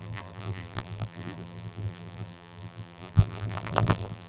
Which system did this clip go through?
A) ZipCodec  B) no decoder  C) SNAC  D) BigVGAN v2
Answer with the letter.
D